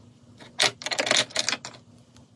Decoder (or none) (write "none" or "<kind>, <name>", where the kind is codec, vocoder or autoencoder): none